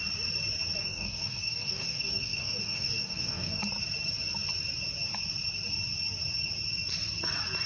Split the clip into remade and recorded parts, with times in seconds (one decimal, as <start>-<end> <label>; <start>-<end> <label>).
0.0-0.8 recorded; 0.8-3.6 remade; 3.6-7.7 recorded